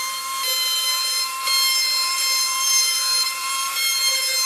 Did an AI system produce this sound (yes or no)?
yes